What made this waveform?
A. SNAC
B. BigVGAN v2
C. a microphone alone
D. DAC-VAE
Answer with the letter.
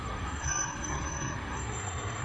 A